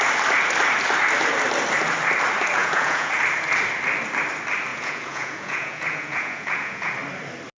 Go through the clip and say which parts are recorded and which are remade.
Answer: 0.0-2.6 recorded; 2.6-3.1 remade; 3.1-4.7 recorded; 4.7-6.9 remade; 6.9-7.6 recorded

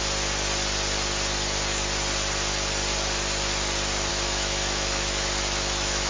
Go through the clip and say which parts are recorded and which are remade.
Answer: 0.0-4.1 recorded; 4.1-6.1 remade